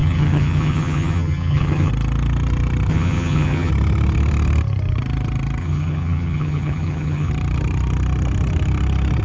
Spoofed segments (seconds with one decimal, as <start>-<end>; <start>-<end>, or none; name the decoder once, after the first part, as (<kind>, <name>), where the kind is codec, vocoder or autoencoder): 0.0-1.9 (vocoder, HiFi-GAN); 2.9-3.7; 5.6-7.3